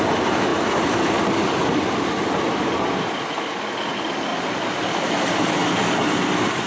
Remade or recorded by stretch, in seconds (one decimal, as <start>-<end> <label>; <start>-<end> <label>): 0.0-6.7 recorded